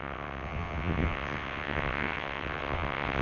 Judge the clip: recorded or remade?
remade